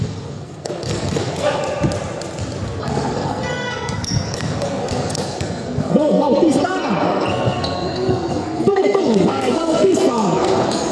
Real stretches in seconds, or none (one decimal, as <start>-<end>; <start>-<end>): 1.6-2.8